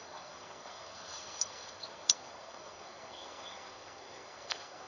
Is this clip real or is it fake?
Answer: fake